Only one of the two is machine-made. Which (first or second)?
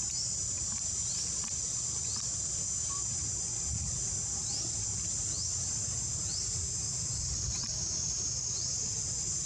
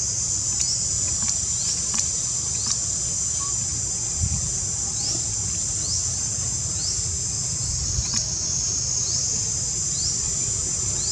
first